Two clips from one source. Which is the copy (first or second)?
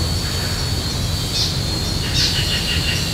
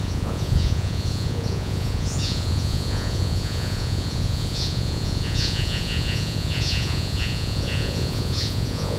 second